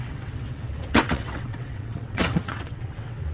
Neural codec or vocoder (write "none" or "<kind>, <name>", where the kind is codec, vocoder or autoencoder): vocoder, WaveNeXt